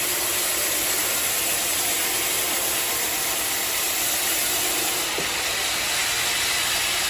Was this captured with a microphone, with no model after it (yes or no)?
yes